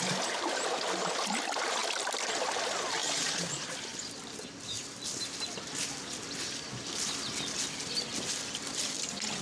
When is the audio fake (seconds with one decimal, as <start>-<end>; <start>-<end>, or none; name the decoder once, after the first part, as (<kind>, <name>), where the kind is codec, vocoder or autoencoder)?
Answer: none